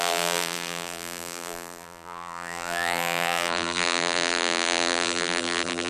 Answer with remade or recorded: remade